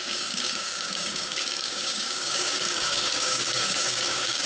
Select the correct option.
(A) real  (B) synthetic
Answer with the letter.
B